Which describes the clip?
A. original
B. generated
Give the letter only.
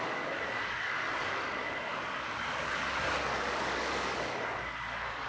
B